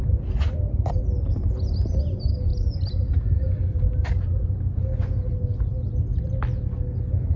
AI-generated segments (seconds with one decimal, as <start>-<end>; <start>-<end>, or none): none